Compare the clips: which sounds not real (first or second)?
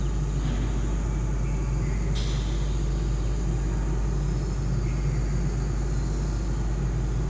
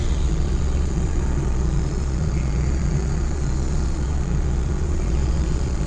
second